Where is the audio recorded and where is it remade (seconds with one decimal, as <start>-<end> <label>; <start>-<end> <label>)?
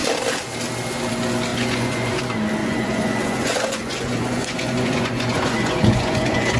0.0-1.5 recorded; 1.5-2.2 remade; 2.2-2.6 recorded; 2.6-6.6 remade